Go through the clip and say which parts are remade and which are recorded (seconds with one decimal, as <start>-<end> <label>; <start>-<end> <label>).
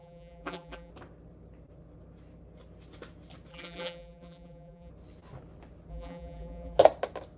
0.0-0.9 remade; 0.9-3.5 recorded; 3.5-4.9 remade; 4.9-5.9 recorded; 5.9-6.8 remade; 6.8-7.4 recorded